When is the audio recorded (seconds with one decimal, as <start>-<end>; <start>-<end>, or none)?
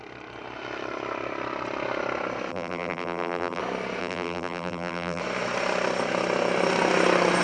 0.0-2.5; 3.6-4.0; 5.2-7.4